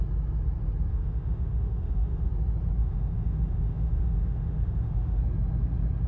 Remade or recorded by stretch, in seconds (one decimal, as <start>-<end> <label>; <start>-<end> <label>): 0.0-0.9 recorded; 0.9-2.3 remade; 2.3-2.8 recorded; 2.8-5.2 remade; 5.2-6.1 recorded